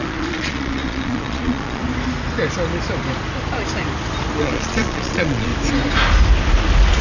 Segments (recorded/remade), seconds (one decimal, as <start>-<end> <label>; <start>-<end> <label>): 0.0-1.8 remade; 1.8-4.4 recorded; 4.4-5.5 remade; 5.5-7.0 recorded